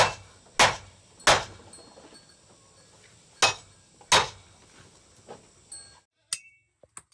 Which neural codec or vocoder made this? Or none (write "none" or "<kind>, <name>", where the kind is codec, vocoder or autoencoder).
none